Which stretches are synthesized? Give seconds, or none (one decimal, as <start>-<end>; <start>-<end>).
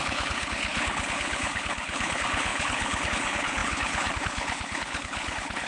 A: 0.0-5.7